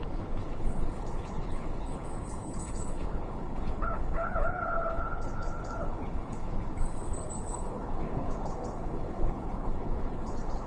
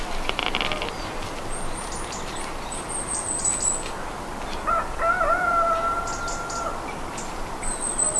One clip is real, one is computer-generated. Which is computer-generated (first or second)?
first